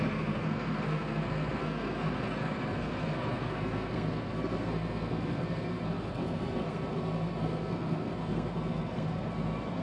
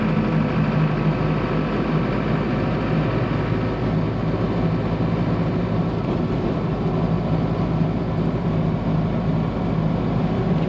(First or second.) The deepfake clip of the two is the first